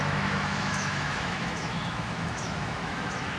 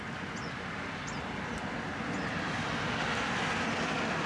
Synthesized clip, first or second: first